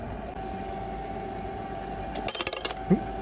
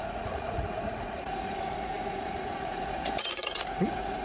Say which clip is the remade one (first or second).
second